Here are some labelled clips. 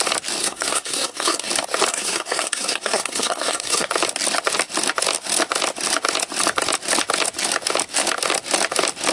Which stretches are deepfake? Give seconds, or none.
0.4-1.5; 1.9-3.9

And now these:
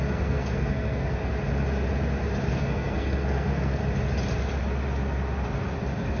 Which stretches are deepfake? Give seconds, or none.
0.0-1.2; 2.6-3.8

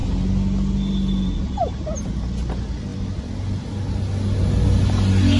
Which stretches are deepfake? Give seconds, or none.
none

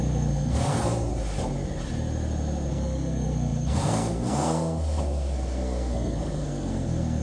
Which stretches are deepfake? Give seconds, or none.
0.0-1.1; 2.7-7.2